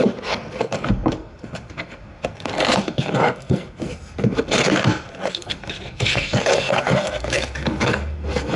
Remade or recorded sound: remade